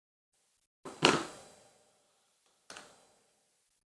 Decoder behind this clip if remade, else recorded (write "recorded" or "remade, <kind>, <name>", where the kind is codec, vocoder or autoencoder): recorded